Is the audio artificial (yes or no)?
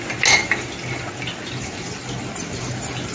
no